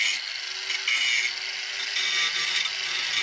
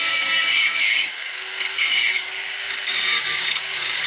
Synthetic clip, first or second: second